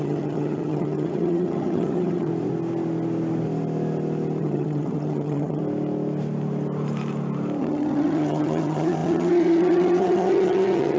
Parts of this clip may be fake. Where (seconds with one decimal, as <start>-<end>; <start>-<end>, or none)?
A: 0.0-2.3; 4.4-5.6; 7.6-11.0